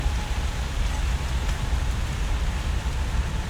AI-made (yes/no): no